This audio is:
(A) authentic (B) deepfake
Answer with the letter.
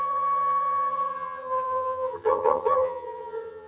B